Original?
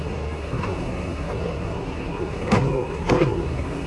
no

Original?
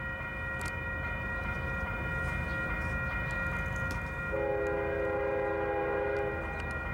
yes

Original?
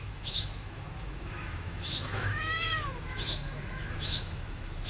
no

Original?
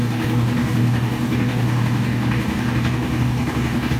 no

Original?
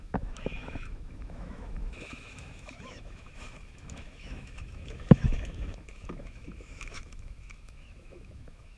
no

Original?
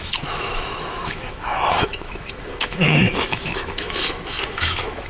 no